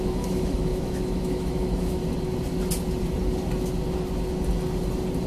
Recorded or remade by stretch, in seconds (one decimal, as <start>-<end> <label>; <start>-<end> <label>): 0.0-2.0 remade; 2.0-5.3 recorded